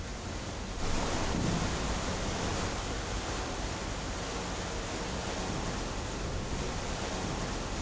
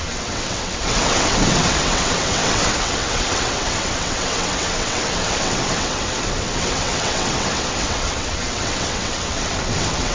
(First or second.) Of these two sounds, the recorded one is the first